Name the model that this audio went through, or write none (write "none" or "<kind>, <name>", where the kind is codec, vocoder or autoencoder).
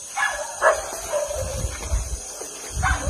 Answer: none